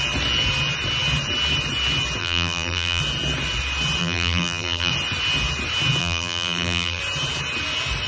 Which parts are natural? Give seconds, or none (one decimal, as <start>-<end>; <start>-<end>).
0.0-2.2; 3.0-4.0; 4.9-6.0; 7.0-8.1